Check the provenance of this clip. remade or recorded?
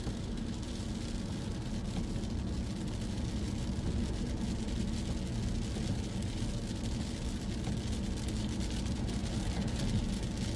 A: recorded